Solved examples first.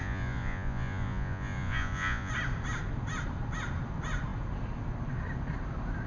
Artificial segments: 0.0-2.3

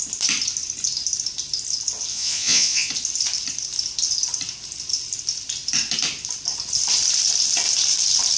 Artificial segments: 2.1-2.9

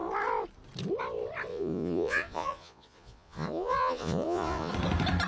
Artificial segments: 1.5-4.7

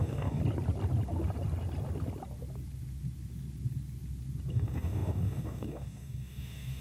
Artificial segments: 0.0-0.4; 4.5-6.8

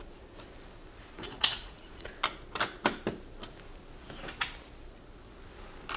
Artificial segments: 1.0-2.1

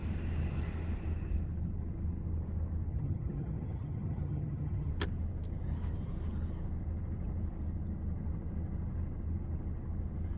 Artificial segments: 2.9-4.9

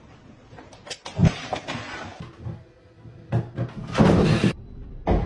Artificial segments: none

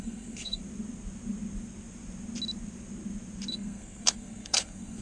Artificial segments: 0.0-0.6; 3.5-5.0